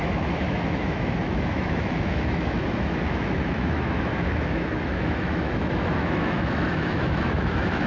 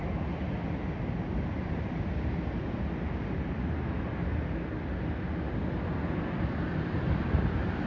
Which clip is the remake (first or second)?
first